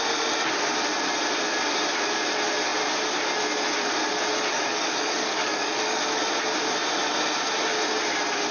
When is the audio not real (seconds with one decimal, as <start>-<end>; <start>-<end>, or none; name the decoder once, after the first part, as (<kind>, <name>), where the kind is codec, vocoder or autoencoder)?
4.5-6.0 (codec, DAC)